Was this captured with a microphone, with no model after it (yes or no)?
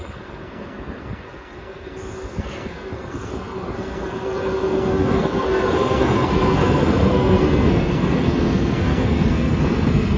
no